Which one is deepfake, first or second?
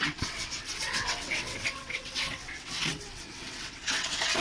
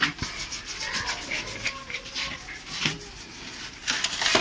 first